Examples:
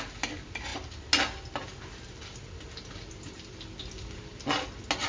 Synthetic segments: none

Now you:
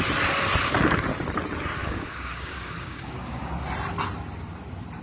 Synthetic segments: 1.8-3.5 (codec, DAC)

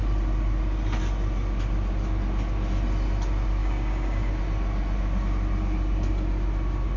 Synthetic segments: 3.6-4.3 (codec, DAC)

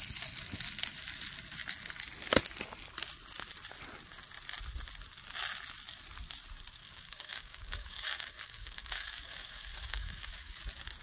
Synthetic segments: 6.8-10.6 (codec, DAC)

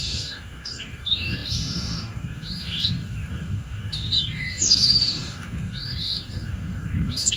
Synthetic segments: 0.0-7.4 (codec, DAC)

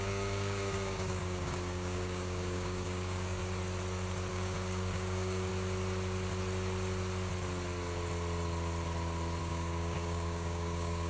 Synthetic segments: 0.0-3.4 (codec, DAC); 4.3-5.5; 9.4-11.1

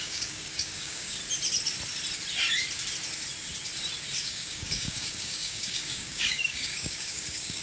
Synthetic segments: 0.0-1.2 (codec, DAC); 4.2-7.6